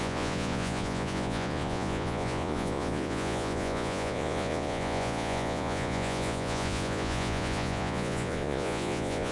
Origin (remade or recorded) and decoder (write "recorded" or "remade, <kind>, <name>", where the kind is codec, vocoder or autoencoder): remade, vocoder, Vocos